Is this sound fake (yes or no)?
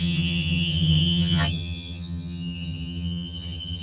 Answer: yes